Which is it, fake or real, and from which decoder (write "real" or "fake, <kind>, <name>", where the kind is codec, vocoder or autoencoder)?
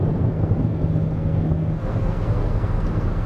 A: fake, codec, SNAC